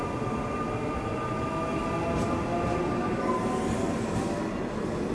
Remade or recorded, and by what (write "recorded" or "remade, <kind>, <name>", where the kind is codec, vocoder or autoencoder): recorded